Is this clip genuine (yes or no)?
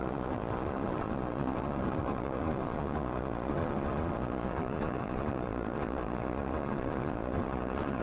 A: no